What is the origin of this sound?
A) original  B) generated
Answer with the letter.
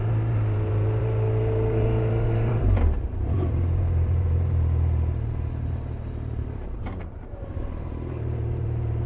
B